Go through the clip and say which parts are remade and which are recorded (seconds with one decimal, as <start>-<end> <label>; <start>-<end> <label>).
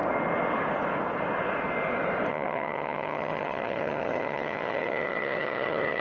0.0-2.3 recorded; 2.3-6.0 remade